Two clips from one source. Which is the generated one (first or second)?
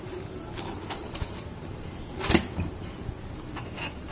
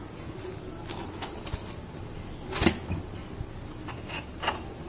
first